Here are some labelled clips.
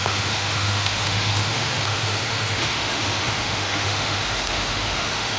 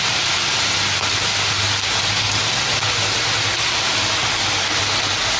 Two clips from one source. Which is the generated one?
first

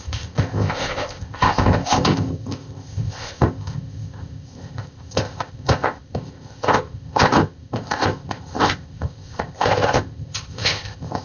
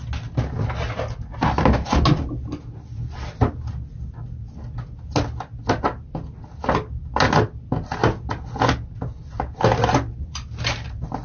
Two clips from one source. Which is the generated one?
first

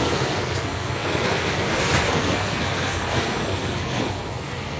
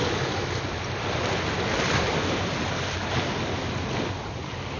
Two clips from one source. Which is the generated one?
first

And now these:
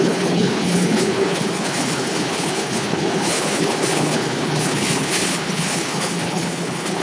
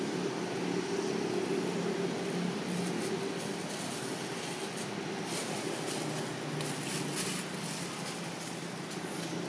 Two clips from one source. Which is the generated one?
first